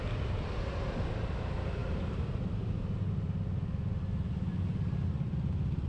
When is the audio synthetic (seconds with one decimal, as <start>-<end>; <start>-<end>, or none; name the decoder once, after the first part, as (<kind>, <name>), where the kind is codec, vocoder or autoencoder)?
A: 1.8-2.8 (vocoder, BigVGAN v2)